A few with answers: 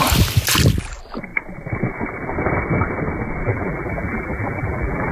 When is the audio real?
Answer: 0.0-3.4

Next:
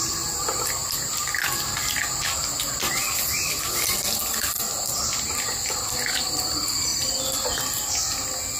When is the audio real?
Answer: 0.0-6.9; 8.0-8.6

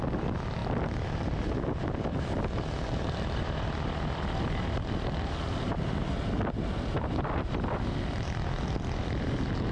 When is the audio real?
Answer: 0.0-9.7

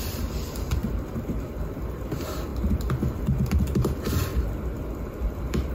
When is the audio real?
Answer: 2.5-3.2

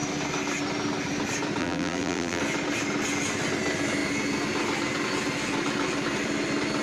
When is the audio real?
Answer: 0.0-1.6; 2.4-6.8

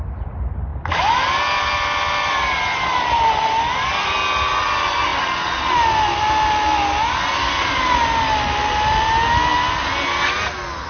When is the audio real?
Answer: 0.0-10.9

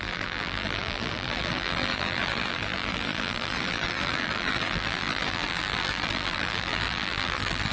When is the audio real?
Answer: none

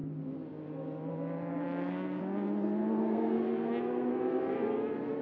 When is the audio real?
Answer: 0.0-1.5; 2.2-3.0; 4.1-5.2